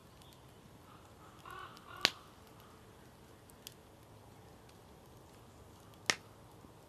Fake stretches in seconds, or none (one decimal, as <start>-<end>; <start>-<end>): none